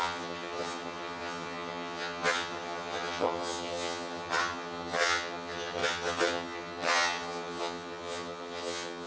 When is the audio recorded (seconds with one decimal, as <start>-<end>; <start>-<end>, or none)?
none